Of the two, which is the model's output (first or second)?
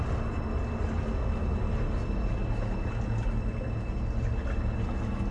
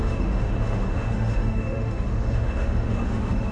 second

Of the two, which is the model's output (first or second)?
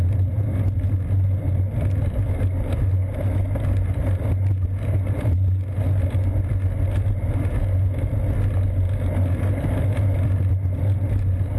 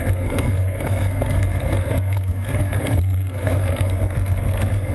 second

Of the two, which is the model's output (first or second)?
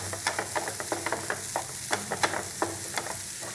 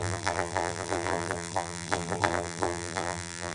second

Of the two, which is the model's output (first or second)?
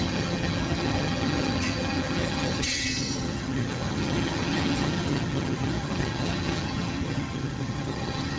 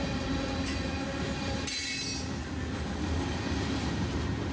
first